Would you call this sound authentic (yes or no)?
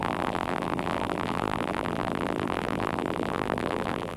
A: no